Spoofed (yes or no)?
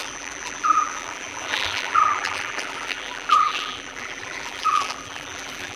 yes